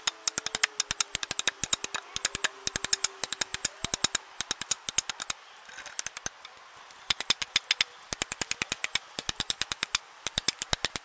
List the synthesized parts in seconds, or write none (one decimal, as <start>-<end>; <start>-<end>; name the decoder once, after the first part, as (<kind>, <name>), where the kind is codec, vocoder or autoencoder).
none